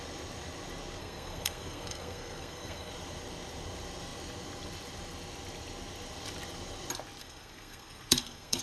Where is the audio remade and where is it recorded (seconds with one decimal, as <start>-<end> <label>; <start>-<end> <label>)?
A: 0.0-1.0 recorded; 1.0-2.9 remade; 2.9-7.2 recorded; 7.2-8.6 remade